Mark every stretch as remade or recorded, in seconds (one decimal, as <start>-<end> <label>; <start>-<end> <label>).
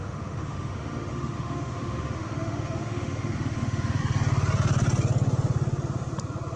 0.0-4.0 remade; 4.0-6.6 recorded